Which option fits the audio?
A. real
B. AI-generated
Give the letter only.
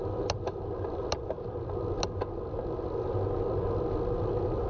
A